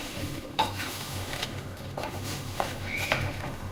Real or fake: fake